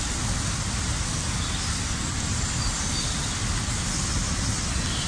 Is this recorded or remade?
recorded